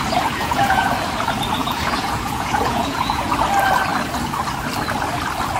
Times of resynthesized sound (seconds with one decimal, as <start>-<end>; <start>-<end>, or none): 0.4-0.9; 1.6-3.3